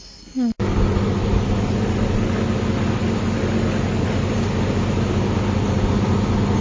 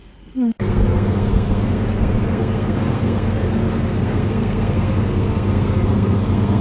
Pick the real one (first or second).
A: first